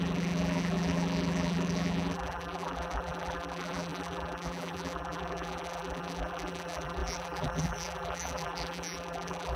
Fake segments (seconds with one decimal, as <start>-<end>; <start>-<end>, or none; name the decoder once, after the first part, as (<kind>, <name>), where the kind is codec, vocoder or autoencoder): 0.0-9.6 (vocoder, BigVGAN v2)